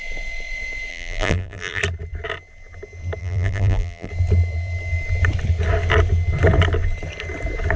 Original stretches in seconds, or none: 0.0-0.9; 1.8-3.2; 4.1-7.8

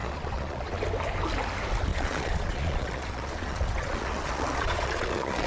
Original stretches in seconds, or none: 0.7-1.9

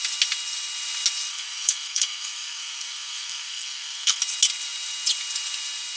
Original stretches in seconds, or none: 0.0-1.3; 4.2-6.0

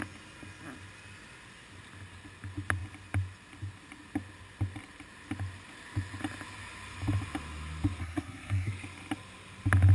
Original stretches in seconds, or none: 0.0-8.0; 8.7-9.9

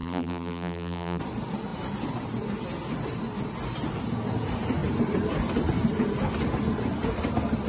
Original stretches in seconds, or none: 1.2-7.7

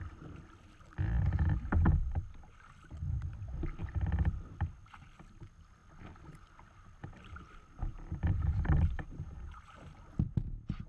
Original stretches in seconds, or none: 0.0-7.9; 10.0-10.9

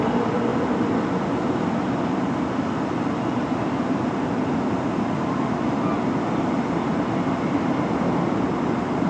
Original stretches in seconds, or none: 0.0-9.1